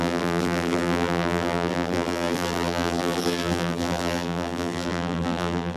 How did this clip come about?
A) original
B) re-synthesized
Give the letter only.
B